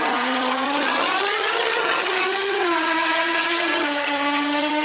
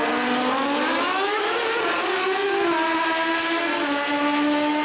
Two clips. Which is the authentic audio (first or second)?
second